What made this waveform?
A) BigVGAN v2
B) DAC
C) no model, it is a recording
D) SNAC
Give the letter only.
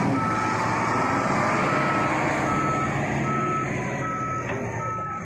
C